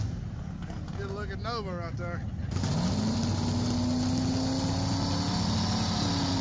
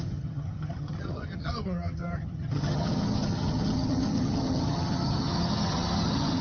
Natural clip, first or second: first